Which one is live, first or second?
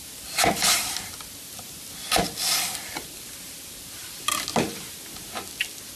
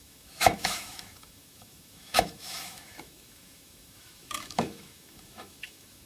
first